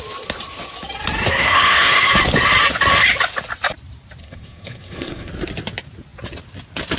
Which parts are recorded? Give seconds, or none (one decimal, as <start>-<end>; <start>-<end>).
0.0-1.3; 2.1-4.2; 5.3-7.0

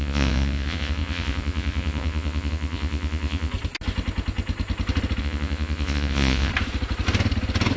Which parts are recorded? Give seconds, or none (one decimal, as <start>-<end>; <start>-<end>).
3.5-5.2; 6.5-7.8